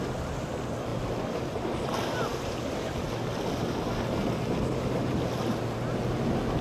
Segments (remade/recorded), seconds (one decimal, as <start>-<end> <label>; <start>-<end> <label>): 0.0-6.6 recorded